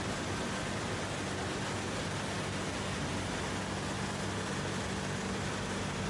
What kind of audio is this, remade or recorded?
recorded